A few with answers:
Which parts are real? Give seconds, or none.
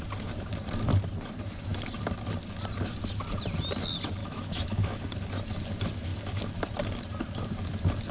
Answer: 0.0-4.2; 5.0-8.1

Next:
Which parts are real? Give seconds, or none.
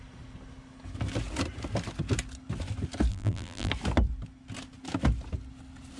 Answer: 0.0-3.1; 3.7-6.0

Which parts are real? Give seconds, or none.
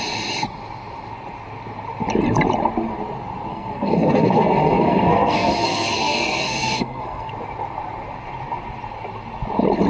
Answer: 0.0-3.5; 7.3-9.9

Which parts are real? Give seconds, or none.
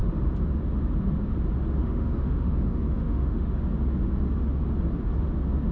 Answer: 0.0-1.8; 3.6-5.7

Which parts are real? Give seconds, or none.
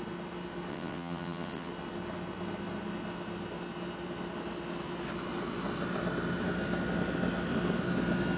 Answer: 0.0-0.7; 1.7-8.4